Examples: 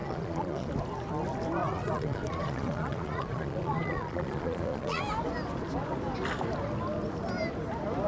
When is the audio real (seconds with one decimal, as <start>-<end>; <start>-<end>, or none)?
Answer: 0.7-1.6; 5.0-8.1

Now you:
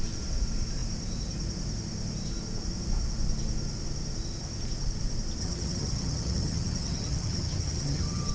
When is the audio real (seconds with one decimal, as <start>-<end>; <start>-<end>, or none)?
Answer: 0.0-5.4

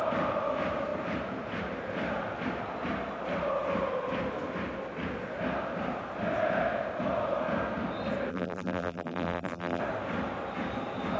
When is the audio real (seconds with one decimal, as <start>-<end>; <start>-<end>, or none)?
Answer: 0.0-8.3; 9.8-11.2

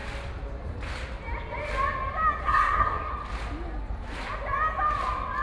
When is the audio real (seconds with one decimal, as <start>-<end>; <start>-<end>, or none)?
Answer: 0.0-2.4; 3.1-5.4

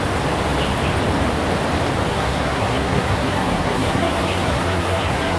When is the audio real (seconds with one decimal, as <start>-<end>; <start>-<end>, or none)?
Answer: 0.0-2.1